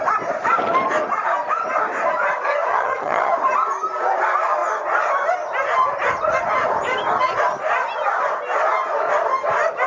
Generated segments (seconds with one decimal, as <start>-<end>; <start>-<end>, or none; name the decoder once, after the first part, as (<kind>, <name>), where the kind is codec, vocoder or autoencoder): 2.7-3.3 (vocoder, HiFi-GAN)